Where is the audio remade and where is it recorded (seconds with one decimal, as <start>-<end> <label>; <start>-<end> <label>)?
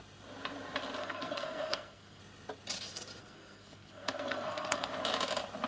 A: 0.0-1.0 recorded; 1.0-2.2 remade; 2.2-3.2 recorded; 3.2-4.9 remade; 4.9-5.7 recorded